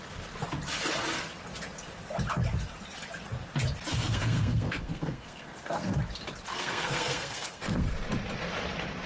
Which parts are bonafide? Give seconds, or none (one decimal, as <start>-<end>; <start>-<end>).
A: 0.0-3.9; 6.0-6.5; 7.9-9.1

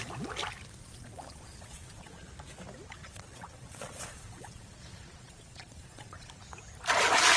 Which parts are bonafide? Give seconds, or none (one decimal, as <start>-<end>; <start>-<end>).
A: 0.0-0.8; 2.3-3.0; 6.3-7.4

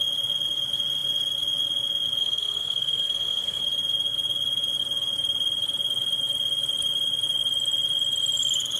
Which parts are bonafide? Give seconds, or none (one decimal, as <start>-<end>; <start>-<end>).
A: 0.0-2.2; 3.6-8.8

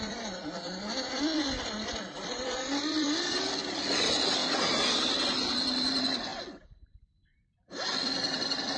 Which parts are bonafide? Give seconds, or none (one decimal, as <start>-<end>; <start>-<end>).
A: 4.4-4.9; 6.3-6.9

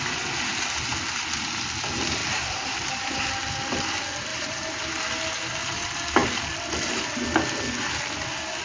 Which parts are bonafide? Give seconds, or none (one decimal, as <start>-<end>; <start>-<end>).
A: 0.0-2.2; 3.3-4.3; 4.9-8.6

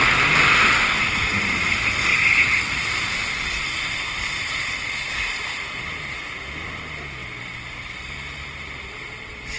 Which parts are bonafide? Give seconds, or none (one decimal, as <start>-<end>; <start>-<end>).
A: 0.0-7.2

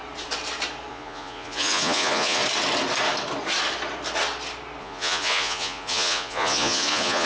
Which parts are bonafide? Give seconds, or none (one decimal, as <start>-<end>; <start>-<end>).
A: 0.0-0.9; 2.4-4.8